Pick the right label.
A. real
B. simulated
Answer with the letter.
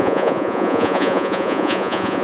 B